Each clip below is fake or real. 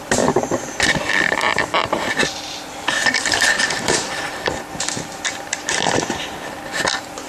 fake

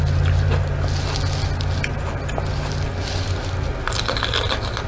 real